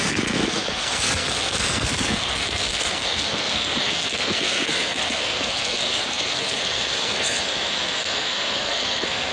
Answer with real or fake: fake